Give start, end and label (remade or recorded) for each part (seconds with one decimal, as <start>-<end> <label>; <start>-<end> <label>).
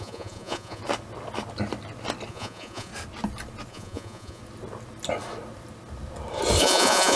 0.0-0.8 remade; 0.8-2.3 recorded; 2.3-2.9 remade; 2.9-3.7 recorded; 3.7-4.4 remade; 4.4-6.6 recorded; 6.6-7.2 remade